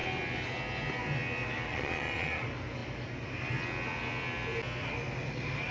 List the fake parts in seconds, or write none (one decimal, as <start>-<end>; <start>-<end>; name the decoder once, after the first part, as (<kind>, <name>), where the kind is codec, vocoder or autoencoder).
1.7-2.4 (vocoder, Vocos)